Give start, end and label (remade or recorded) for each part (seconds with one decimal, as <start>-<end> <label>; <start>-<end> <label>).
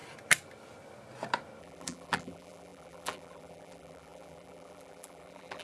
0.0-1.6 recorded; 1.6-5.6 remade